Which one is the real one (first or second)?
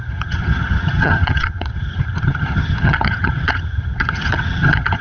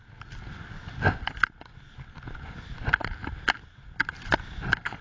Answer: second